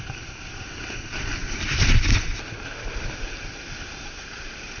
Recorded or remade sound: recorded